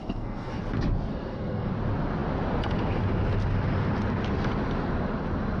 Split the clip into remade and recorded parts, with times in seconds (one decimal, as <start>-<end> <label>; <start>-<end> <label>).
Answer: 0.0-0.6 remade; 0.6-1.1 recorded; 1.1-1.7 remade; 1.7-5.6 recorded